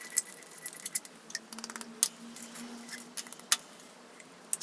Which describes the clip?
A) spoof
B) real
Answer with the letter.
B